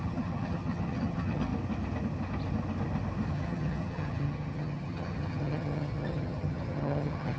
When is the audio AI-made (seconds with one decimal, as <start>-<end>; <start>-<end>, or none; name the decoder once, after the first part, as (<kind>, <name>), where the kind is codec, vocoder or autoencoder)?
0.0-1.5 (vocoder, HiFi-GAN); 3.3-7.4